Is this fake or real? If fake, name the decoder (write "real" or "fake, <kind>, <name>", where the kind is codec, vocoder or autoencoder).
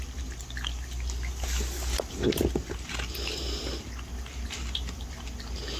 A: real